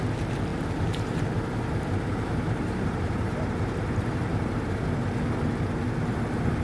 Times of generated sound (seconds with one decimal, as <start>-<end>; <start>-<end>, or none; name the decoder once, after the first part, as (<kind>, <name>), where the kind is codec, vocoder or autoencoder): 0.5-4.5 (vocoder, BigVGAN v2)